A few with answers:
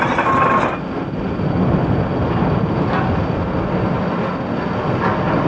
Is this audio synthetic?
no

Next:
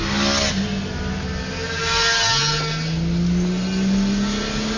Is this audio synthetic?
no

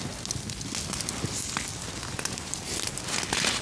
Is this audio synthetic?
no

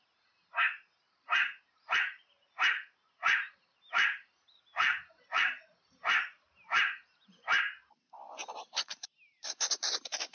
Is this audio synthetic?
yes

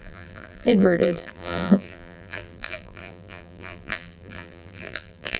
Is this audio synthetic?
yes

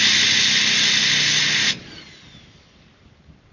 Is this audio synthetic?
no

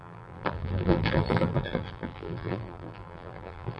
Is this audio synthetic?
yes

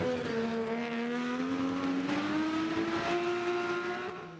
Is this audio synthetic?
no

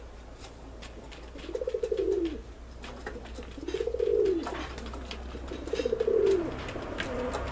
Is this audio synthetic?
no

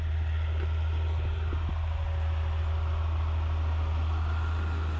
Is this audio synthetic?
no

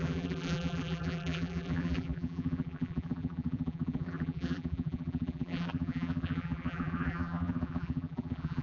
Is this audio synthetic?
yes